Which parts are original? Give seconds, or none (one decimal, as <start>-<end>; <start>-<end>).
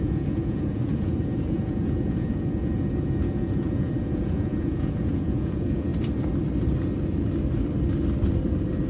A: 5.9-8.9